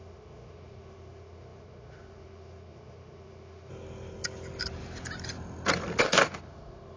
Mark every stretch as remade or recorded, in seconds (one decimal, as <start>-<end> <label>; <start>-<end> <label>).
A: 0.0-3.7 remade; 3.7-6.0 recorded; 6.0-7.0 remade